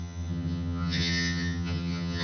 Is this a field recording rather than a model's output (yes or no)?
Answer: no